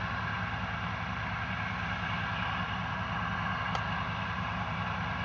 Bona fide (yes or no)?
yes